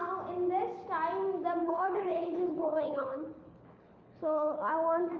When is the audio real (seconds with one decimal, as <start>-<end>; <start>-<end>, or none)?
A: 0.0-1.6; 4.7-5.2